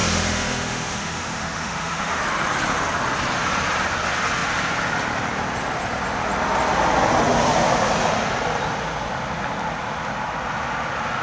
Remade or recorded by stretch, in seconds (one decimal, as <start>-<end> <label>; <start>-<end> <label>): 0.0-2.2 remade; 2.2-11.2 recorded